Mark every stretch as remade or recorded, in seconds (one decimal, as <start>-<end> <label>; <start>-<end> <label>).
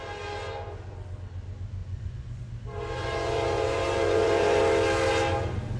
0.0-1.8 recorded; 1.8-2.4 remade; 2.4-3.0 recorded; 3.0-4.6 remade; 4.6-5.8 recorded